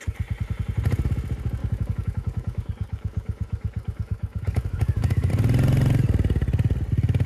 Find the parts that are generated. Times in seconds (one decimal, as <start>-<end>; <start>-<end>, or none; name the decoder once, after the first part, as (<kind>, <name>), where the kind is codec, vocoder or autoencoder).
1.6-5.3 (codec, DAC)